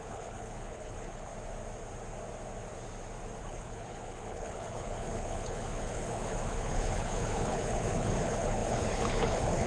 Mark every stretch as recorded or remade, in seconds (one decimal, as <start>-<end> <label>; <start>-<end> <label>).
0.0-1.3 remade; 1.3-3.4 recorded; 3.4-9.7 remade

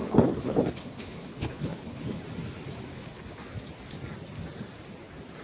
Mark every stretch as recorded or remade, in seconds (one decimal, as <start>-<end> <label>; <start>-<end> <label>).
0.0-2.2 remade; 2.2-2.9 recorded; 2.9-3.4 remade; 3.4-5.4 recorded